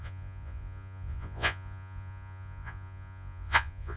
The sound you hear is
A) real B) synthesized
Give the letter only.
B